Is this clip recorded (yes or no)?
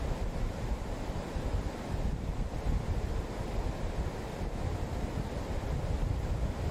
yes